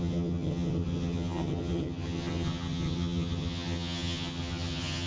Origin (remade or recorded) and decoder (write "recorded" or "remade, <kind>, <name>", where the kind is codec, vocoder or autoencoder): remade, vocoder, HiFi-GAN